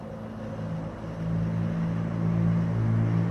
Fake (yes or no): no